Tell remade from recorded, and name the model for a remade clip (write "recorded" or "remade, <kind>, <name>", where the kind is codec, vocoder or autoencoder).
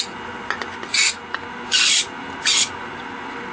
recorded